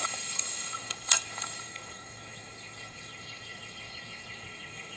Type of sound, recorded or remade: remade